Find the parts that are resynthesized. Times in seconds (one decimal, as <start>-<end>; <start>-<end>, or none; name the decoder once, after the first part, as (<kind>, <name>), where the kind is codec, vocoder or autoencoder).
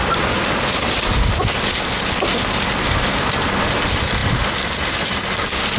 none